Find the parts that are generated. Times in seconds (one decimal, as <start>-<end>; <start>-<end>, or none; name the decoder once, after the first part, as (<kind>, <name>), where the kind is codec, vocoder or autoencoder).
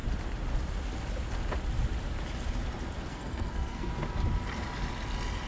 3.1-3.9 (codec, SNAC)